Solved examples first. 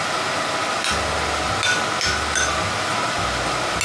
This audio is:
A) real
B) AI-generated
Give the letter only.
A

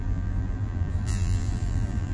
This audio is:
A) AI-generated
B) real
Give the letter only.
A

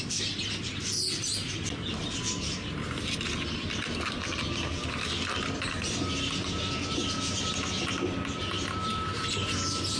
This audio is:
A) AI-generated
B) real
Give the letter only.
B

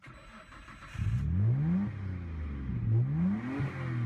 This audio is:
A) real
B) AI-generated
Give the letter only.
A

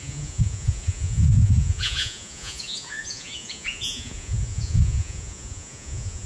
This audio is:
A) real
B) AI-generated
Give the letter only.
B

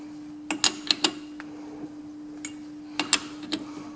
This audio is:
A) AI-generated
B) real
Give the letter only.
B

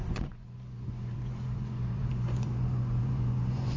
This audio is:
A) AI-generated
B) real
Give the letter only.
A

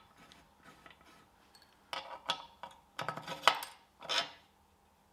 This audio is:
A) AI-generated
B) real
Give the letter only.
B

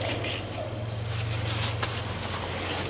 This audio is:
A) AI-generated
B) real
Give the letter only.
B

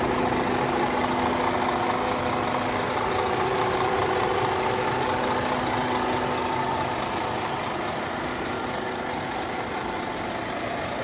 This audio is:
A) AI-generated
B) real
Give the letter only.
B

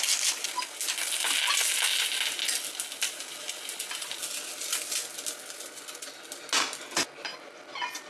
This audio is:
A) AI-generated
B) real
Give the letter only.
B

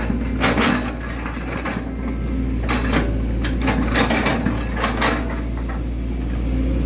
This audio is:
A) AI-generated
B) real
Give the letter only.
B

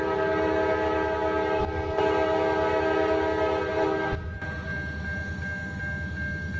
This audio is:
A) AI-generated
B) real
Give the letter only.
B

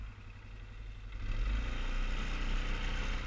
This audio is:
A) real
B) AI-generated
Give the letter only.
A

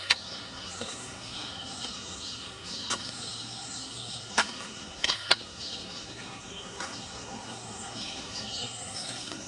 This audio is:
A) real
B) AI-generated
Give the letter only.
B